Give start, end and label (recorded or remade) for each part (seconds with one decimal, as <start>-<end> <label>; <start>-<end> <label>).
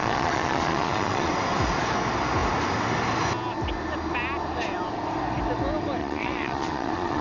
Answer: 0.0-1.3 remade; 1.3-6.0 recorded; 6.0-7.2 remade